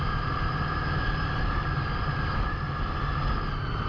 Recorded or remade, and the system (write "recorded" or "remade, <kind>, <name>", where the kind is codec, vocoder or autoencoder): recorded